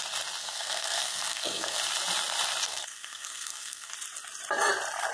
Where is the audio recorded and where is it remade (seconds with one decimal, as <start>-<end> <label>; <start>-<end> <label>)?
0.0-0.4 recorded; 0.4-1.8 remade; 1.8-2.7 recorded; 2.7-3.9 remade; 3.9-5.1 recorded